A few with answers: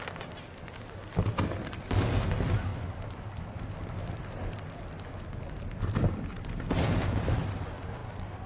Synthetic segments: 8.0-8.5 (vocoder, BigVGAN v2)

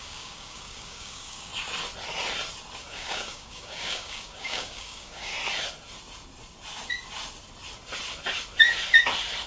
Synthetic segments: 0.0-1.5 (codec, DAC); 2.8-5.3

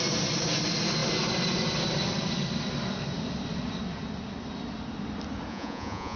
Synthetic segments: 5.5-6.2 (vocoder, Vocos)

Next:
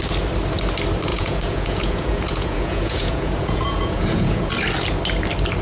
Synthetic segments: 1.1-4.5 (vocoder, Vocos)